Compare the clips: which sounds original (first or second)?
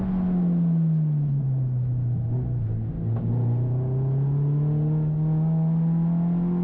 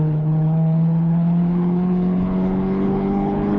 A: first